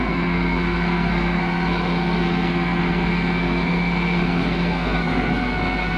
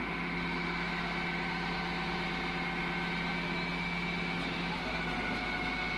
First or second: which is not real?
first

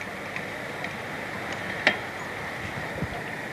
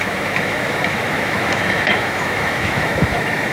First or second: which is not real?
second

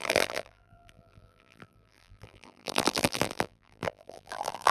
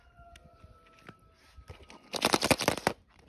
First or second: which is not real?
first